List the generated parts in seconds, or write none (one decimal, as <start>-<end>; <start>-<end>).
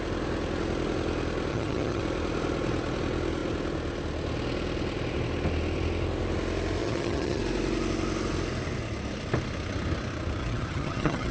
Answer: 1.5-2.0; 6.8-7.4; 10.4-11.3